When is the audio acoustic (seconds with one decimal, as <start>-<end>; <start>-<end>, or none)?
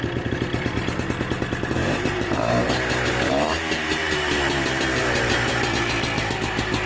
0.0-1.8; 5.9-6.9